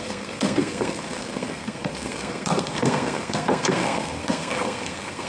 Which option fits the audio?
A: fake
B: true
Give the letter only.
A